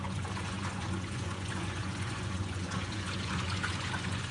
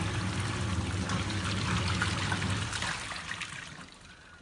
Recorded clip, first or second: second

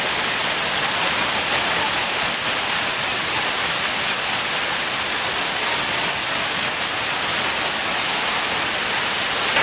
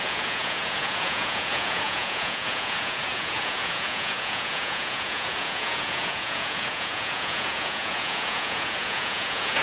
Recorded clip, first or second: first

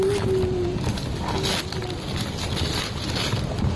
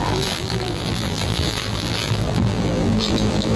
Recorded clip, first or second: first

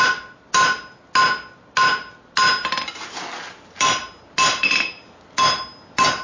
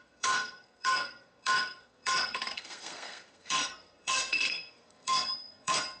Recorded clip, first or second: first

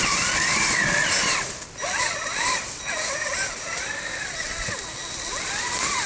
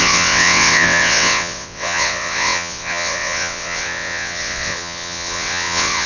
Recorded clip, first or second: first